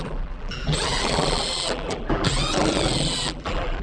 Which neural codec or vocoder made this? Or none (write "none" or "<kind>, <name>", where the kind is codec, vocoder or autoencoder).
vocoder, BigVGAN v2